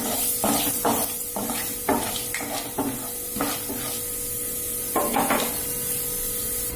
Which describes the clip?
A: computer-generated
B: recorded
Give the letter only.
B